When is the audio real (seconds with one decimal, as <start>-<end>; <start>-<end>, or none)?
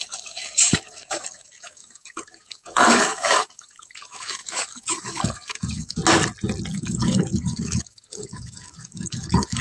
6.0-6.7